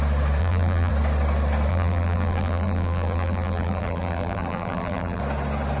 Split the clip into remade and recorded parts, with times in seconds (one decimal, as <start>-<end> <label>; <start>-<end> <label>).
0.0-0.4 recorded; 0.4-0.9 remade; 0.9-1.7 recorded; 1.7-5.2 remade; 5.2-5.8 recorded